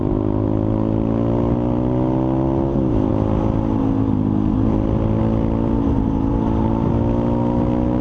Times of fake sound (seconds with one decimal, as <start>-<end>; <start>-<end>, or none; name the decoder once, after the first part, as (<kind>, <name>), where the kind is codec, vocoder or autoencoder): none